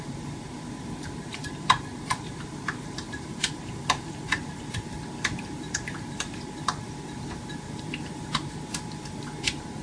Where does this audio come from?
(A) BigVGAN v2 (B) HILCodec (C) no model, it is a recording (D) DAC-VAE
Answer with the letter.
A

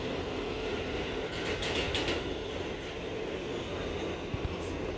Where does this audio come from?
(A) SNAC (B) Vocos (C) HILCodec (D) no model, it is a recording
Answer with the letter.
D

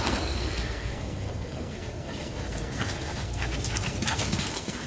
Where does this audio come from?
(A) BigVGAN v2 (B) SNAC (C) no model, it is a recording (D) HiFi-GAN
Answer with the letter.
B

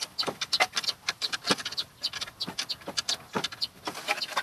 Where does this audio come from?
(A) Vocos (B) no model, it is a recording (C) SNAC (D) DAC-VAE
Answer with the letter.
B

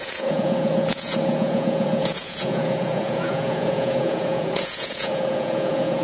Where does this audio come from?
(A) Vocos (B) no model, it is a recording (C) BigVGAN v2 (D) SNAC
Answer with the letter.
A